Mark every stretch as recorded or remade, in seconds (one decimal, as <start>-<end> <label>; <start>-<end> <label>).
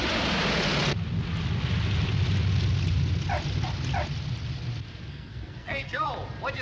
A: 0.0-5.1 recorded; 5.1-6.1 remade; 6.1-6.6 recorded